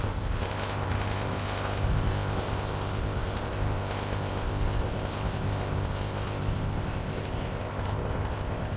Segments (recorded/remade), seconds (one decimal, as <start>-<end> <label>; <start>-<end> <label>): 0.0-8.8 remade